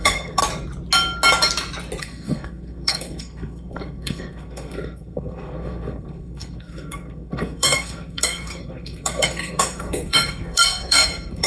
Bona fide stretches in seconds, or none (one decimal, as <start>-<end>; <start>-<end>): 0.4-2.0